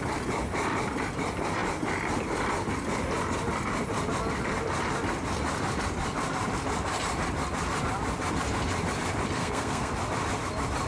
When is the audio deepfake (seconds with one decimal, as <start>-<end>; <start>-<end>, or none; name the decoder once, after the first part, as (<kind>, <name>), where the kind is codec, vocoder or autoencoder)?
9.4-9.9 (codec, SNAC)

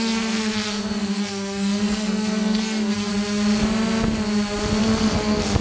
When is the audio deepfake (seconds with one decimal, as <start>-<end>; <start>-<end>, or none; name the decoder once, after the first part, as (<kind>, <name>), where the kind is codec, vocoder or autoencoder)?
0.0-3.1 (codec, SNAC); 4.8-5.6

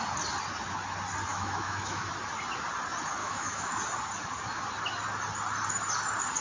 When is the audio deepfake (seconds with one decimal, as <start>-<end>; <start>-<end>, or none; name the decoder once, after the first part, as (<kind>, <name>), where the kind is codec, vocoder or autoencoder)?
1.3-2.1 (autoencoder, DAC-VAE); 3.2-3.8

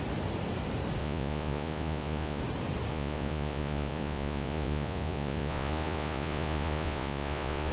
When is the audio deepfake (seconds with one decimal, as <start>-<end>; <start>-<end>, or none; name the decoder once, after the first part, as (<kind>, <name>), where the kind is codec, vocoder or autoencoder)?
1.0-2.4 (vocoder, Vocos); 2.9-7.7